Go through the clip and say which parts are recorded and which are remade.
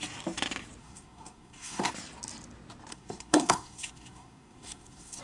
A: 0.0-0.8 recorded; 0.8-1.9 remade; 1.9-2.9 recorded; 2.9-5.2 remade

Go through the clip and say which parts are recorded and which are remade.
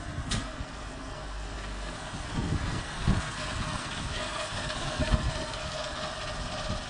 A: 0.0-6.1 remade; 6.1-6.9 recorded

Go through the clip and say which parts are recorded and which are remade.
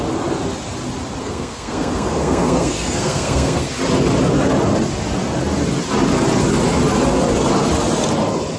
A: 0.0-1.2 recorded; 1.2-3.7 remade; 3.7-8.6 recorded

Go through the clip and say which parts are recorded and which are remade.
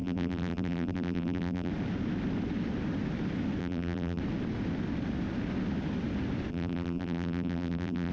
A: 0.0-1.7 remade; 1.7-3.6 recorded; 3.6-4.2 remade; 4.2-6.5 recorded; 6.5-8.1 remade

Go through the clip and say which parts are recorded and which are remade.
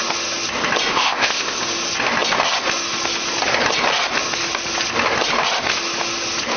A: 0.0-0.9 recorded; 0.9-1.6 remade; 1.6-6.6 recorded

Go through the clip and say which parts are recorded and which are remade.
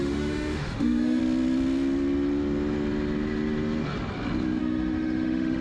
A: 0.0-1.2 remade; 1.2-4.6 recorded; 4.6-5.6 remade